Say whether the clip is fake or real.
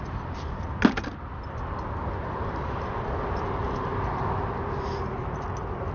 real